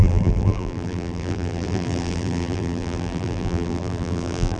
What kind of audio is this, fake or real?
fake